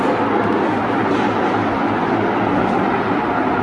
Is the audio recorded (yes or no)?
yes